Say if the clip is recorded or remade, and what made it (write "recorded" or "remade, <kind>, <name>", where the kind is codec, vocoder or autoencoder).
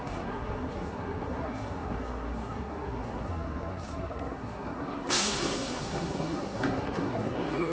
remade, codec, SNAC